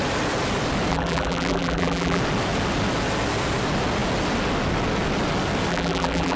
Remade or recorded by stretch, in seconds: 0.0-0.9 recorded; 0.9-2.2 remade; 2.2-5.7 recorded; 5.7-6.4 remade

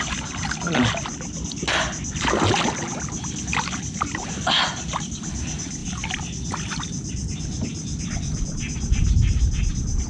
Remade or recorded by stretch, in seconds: 0.0-10.1 recorded

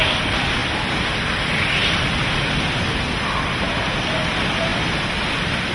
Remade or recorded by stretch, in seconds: 0.0-5.7 recorded

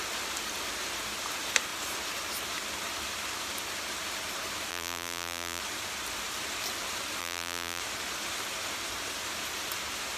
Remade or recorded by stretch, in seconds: 0.0-4.7 recorded; 4.7-5.6 remade; 5.6-7.2 recorded; 7.2-7.8 remade; 7.8-10.2 recorded